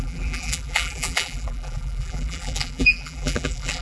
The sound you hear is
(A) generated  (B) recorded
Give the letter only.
A